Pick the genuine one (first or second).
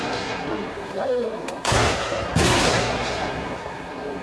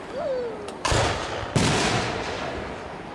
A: second